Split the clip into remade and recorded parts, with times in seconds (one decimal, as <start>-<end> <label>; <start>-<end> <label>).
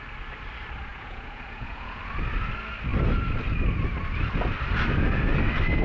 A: 0.0-0.9 recorded; 0.9-2.0 remade; 2.0-5.8 recorded